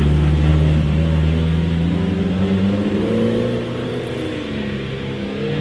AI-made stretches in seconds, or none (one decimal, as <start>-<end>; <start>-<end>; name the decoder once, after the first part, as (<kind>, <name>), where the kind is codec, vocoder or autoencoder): none